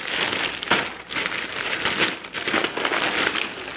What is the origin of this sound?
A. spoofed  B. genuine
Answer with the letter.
B